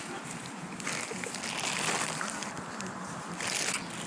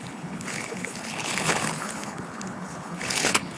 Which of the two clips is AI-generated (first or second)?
second